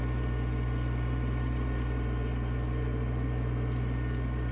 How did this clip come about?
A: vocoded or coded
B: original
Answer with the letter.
B